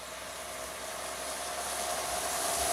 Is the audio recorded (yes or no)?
yes